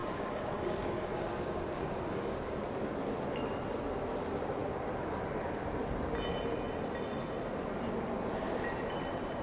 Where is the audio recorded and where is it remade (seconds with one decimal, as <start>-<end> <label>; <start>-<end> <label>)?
0.0-2.6 remade; 2.6-9.4 recorded